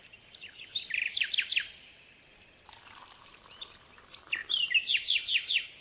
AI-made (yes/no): yes